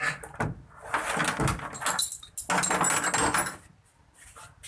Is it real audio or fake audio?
real